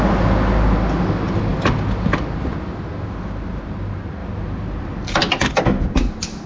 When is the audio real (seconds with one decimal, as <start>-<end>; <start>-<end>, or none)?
0.0-6.5